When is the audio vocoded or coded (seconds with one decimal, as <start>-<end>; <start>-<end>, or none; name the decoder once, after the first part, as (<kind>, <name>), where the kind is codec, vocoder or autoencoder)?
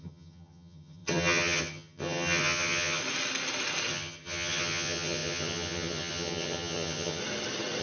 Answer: 0.0-3.0 (vocoder, HiFi-GAN); 3.9-7.2